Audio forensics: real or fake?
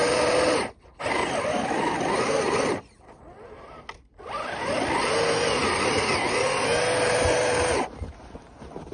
real